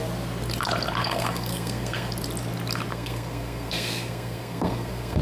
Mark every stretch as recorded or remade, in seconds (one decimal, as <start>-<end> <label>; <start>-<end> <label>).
0.0-1.0 recorded; 1.0-2.1 remade; 2.1-2.9 recorded; 2.9-5.2 remade